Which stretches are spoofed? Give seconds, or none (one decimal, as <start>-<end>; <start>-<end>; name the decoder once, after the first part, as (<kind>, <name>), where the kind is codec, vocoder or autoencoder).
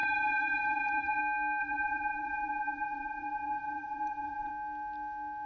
0.0-1.2 (vocoder, Vocos); 1.6-4.5